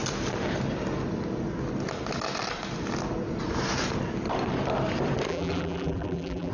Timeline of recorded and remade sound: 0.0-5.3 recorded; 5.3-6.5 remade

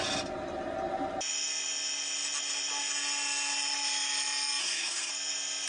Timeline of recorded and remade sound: 0.0-4.6 recorded; 4.6-5.1 remade; 5.1-5.7 recorded

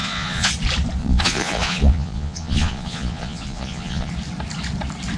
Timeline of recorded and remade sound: 0.0-0.5 remade; 0.5-1.0 recorded; 1.0-4.1 remade; 4.1-5.2 recorded

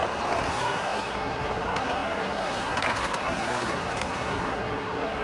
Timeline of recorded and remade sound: 0.0-0.5 recorded; 0.5-5.2 remade

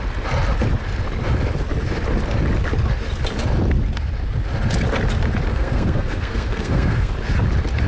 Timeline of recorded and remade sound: 0.0-5.5 recorded; 5.5-7.1 remade; 7.1-7.9 recorded

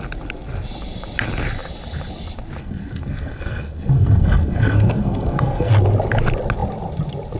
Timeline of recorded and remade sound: 0.0-2.6 recorded; 2.6-5.7 remade; 5.7-7.4 recorded

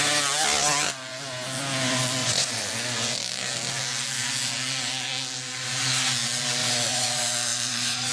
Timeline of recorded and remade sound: 0.0-2.2 recorded; 2.2-2.7 remade; 2.7-6.6 recorded; 6.6-8.1 remade